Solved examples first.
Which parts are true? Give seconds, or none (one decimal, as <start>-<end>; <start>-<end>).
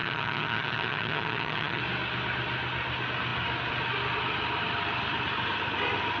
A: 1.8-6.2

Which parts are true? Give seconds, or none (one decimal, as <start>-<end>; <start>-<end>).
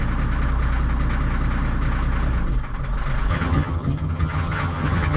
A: 0.0-3.3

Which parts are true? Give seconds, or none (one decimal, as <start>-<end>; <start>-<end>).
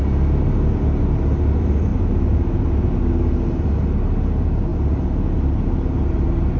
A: 0.0-6.6